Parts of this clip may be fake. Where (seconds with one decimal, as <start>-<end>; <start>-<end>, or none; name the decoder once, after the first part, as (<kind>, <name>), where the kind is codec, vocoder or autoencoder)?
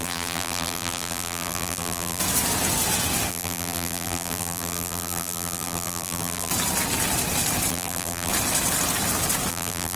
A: 0.0-2.2 (vocoder, BigVGAN v2); 3.3-6.5; 7.7-8.3; 9.5-10.0